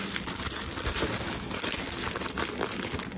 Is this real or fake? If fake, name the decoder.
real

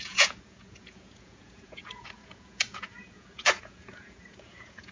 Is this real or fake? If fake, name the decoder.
fake, vocoder, Vocos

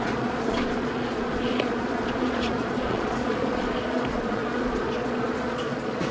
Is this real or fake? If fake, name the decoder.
fake, vocoder, Vocos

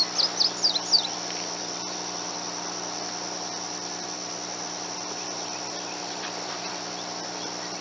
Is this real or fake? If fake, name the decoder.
real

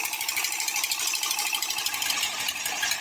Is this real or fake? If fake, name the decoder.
real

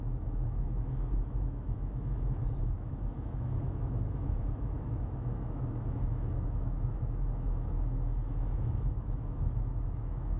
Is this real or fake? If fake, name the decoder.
fake, autoencoder, DAC-VAE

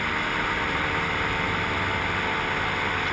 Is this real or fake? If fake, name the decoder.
real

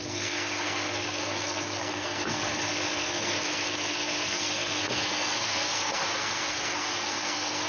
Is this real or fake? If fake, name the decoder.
fake, codec, SNAC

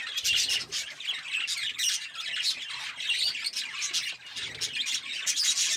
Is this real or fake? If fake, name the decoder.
real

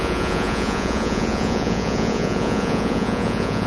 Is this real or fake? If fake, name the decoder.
fake, vocoder, Vocos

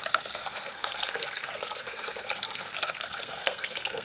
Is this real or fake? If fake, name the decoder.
fake, codec, SNAC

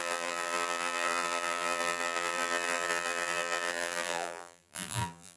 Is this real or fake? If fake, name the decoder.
fake, vocoder, BigVGAN v2